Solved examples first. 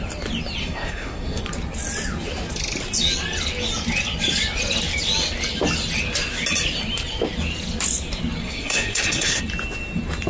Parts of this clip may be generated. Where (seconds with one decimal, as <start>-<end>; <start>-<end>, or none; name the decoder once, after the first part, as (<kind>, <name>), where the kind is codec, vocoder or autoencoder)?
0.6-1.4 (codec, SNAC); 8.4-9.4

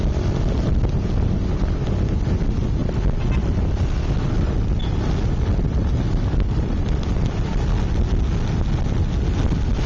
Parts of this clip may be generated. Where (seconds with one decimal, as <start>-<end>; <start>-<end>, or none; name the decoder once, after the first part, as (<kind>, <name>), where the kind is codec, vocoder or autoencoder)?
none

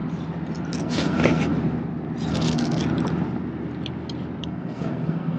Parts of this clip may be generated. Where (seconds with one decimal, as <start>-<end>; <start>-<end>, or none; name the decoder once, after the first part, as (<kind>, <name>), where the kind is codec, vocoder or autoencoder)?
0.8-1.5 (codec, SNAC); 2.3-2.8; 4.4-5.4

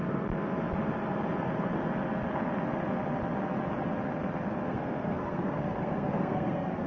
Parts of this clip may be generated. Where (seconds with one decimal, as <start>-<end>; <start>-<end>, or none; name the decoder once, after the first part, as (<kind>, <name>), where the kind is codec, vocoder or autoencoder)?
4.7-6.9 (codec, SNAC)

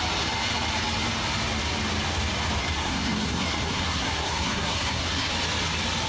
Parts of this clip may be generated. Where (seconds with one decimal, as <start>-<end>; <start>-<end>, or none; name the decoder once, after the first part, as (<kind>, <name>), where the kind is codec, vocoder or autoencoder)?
2.6-5.3 (codec, SNAC)

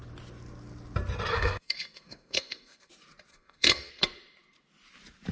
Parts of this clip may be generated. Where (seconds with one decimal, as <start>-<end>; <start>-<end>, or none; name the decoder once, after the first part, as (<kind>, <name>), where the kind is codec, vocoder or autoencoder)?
1.3-2.9 (codec, SNAC); 3.3-3.9